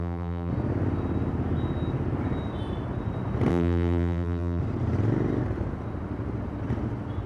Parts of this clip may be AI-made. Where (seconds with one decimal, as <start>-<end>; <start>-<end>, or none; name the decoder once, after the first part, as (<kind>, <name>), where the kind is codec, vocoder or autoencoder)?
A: 0.0-0.5 (vocoder, BigVGAN v2); 3.5-4.6